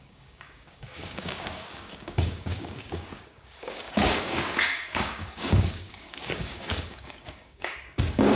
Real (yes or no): no